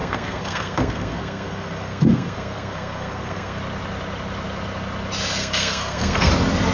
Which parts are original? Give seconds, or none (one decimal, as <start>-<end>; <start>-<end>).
3.6-5.4; 6.3-6.7